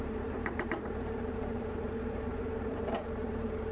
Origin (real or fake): fake